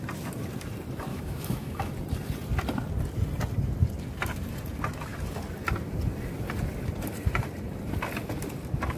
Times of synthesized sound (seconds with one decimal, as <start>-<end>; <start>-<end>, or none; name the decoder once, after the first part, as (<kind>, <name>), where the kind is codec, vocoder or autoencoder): 1.1-1.9 (autoencoder, DAC-VAE)